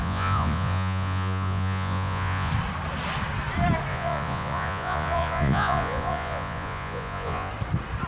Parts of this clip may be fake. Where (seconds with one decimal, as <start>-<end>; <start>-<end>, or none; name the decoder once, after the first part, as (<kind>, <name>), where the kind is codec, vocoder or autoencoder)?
0.0-2.5 (vocoder, Vocos); 3.9-7.5

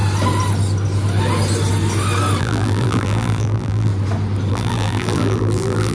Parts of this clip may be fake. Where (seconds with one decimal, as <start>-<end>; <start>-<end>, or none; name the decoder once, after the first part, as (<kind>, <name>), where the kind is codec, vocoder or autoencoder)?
2.4-3.9 (vocoder, BigVGAN v2); 4.5-5.9